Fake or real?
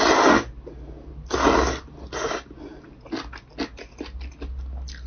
real